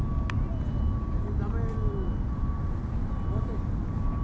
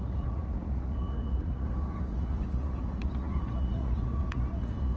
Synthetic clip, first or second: second